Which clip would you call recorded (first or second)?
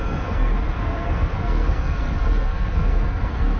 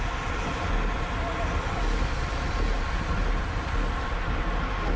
second